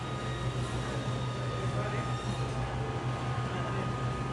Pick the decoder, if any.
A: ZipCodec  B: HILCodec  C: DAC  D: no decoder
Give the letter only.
D